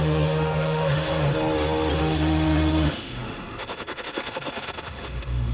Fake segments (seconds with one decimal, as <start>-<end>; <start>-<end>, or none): 0.0-1.3; 2.0-5.5